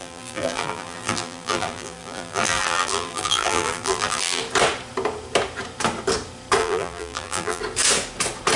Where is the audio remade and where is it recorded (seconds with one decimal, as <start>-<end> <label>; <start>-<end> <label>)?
0.0-4.4 remade; 4.4-6.6 recorded; 6.6-7.6 remade; 7.6-8.6 recorded